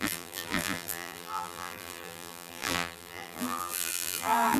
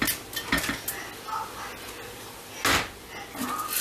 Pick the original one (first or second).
second